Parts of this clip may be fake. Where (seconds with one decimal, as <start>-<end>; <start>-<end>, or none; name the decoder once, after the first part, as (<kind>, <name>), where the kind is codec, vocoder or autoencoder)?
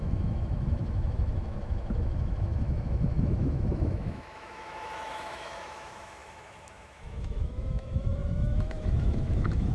0.0-9.7 (autoencoder, DAC-VAE)